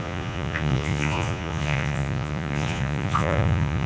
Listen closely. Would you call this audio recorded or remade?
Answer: remade